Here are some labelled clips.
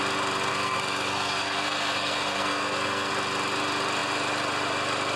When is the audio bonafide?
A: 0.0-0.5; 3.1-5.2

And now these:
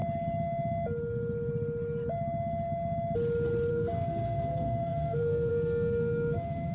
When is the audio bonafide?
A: 0.0-3.7

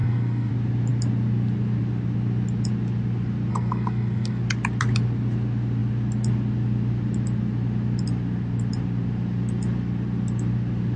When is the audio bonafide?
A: 0.5-3.5; 4.4-11.0

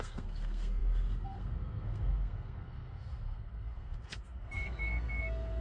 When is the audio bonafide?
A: none

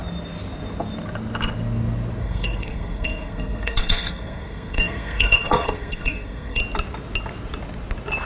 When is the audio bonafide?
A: 0.0-2.2; 6.6-8.3

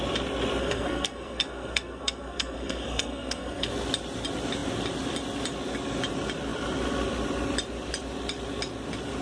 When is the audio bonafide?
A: 0.0-0.6; 3.7-9.2

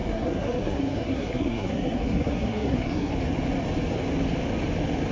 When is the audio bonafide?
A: 3.1-5.1

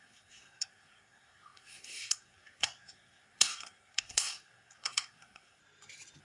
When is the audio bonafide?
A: 5.6-6.2